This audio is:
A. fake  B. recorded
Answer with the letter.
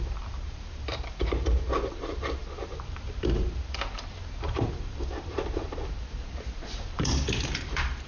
A